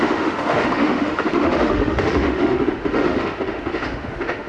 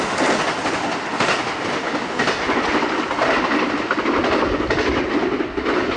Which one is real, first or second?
second